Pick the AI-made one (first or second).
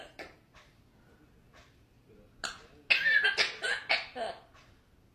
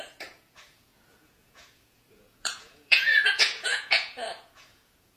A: second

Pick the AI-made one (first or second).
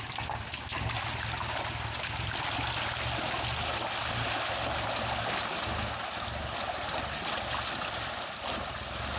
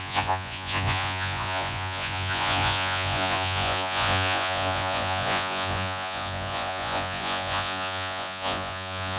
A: second